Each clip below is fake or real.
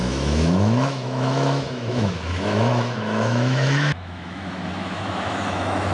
fake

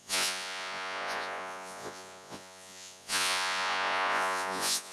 fake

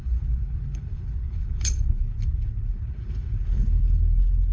fake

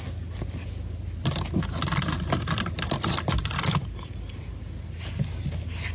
real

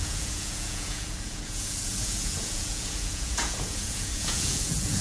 fake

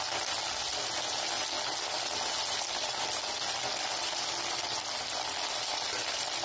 real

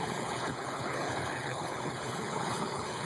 fake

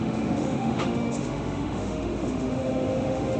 fake